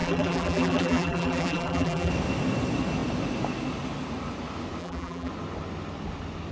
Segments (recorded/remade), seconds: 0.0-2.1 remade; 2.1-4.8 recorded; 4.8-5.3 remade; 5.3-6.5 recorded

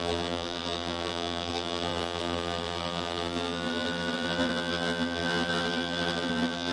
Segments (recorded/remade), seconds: 0.0-6.7 remade

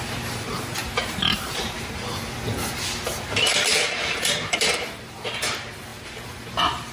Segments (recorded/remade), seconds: 0.0-2.2 remade; 2.2-3.3 recorded; 3.3-6.9 remade

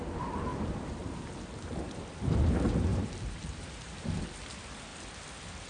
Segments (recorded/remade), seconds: 0.0-0.5 recorded; 0.5-1.3 remade; 1.3-2.9 recorded; 2.9-4.2 remade; 4.2-5.7 recorded